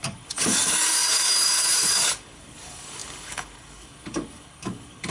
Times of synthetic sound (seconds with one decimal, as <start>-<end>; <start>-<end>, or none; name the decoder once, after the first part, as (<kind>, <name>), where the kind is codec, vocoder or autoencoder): 0.0-5.1 (codec, DAC)